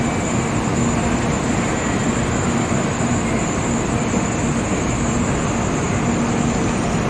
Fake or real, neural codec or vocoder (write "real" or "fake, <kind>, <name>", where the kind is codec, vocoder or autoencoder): real